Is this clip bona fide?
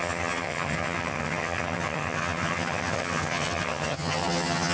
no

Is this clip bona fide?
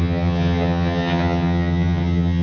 no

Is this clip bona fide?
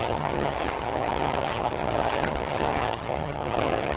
no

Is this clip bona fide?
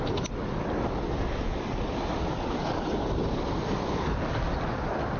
yes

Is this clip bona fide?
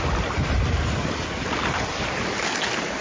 yes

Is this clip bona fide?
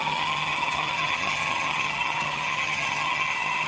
no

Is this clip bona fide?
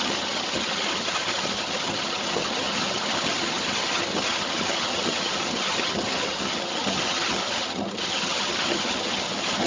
no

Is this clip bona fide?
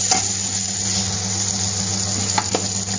yes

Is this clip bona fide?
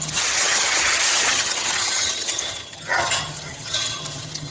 no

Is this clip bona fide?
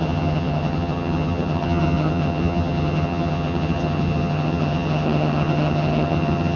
no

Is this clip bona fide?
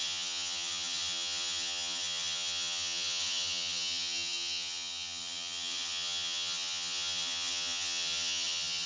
no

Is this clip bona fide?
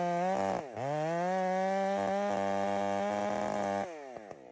yes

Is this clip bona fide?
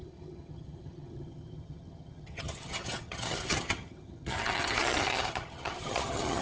no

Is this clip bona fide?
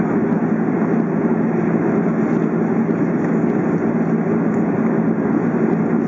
yes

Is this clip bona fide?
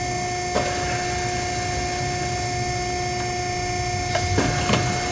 yes